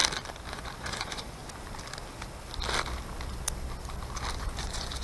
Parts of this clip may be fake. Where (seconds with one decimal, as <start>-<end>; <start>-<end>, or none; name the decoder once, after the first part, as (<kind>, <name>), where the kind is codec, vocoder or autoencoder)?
0.5-1.4 (vocoder, Vocos); 4.4-5.0